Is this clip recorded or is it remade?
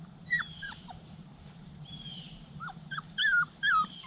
remade